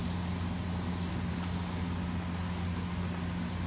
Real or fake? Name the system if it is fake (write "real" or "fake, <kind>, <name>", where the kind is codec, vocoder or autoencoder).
real